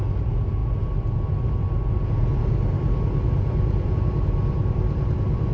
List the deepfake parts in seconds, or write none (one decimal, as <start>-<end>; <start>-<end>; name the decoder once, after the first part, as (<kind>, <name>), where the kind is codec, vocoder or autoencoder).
none